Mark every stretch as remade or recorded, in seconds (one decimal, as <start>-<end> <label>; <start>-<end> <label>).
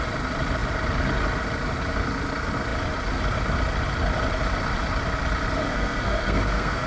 0.0-5.6 recorded; 5.6-6.9 remade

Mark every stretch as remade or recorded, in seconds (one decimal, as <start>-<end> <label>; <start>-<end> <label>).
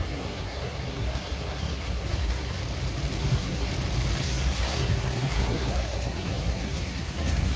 0.0-2.6 remade; 2.6-3.2 recorded; 3.2-3.7 remade; 3.7-4.2 recorded; 4.2-7.6 remade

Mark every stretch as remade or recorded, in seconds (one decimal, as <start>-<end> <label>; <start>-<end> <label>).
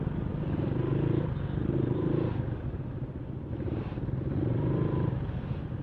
0.0-5.8 recorded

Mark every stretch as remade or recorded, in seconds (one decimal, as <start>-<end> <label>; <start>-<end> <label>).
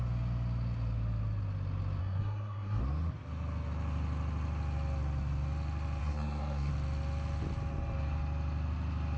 0.0-2.0 recorded; 2.0-2.8 remade; 2.8-6.0 recorded; 6.0-6.7 remade; 6.7-9.2 recorded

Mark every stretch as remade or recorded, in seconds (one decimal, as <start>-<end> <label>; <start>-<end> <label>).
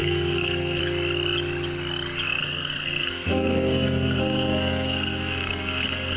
0.0-0.8 remade; 0.8-2.4 recorded; 2.4-6.2 remade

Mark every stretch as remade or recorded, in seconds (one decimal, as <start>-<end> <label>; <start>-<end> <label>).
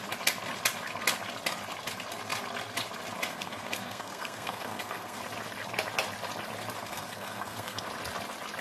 0.0-3.3 recorded; 3.3-5.2 remade; 5.2-6.8 recorded; 6.8-7.9 remade; 7.9-8.6 recorded